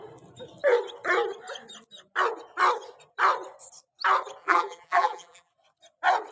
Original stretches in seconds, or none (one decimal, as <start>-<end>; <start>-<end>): 0.0-4.4; 5.5-6.3